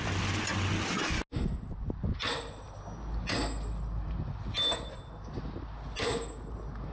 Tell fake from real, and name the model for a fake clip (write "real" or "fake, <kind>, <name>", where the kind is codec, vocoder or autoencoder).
real